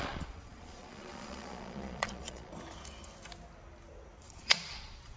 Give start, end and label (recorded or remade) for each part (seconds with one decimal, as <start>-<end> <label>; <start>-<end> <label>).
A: 0.0-2.5 remade; 2.5-4.2 recorded; 4.2-5.2 remade